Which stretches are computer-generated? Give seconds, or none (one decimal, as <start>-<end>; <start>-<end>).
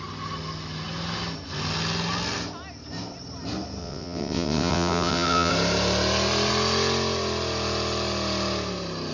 3.8-5.5